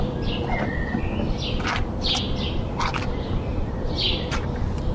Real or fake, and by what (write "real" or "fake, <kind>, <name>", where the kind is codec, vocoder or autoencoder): real